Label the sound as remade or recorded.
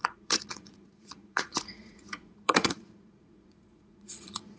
remade